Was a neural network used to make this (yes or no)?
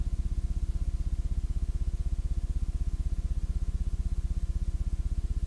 no